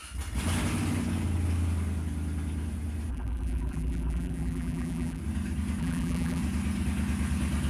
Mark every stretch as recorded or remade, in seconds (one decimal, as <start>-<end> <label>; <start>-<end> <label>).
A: 0.0-3.1 recorded; 3.1-5.2 remade; 5.2-5.8 recorded; 5.8-6.4 remade; 6.4-7.7 recorded